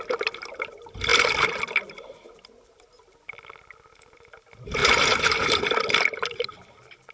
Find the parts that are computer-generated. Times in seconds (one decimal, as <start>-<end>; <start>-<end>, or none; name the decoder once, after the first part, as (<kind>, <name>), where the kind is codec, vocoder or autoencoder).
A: 4.8-5.6 (vocoder, BigVGAN v2)